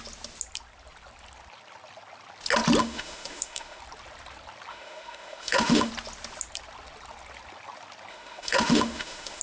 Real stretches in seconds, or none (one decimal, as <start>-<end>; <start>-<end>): 0.0-2.8; 3.8-4.7; 5.9-8.1